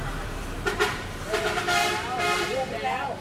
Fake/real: fake